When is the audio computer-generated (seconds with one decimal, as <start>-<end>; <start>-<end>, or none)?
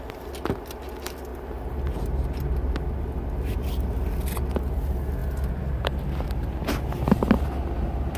none